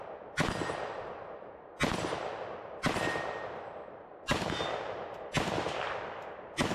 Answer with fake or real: real